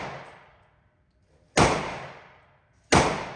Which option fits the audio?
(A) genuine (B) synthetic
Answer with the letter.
A